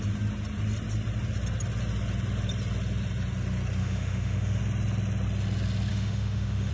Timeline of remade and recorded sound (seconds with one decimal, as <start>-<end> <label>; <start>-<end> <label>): 0.0-3.8 recorded; 3.8-4.6 remade; 4.6-5.9 recorded; 5.9-6.7 remade